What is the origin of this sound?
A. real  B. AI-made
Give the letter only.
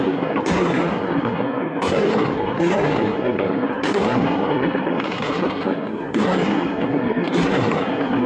B